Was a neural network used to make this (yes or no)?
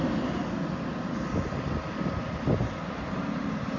no